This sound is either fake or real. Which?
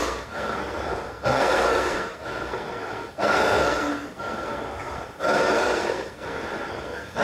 fake